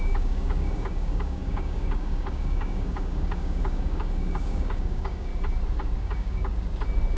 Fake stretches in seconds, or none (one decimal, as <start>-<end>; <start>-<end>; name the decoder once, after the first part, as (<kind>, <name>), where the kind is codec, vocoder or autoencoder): 0.0-5.3 (codec, DAC); 6.0-6.5